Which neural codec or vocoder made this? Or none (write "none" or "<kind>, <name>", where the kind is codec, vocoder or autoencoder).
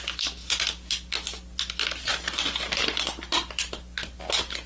none